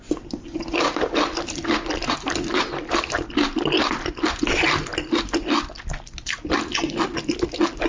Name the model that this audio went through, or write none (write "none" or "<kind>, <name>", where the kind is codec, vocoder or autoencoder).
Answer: none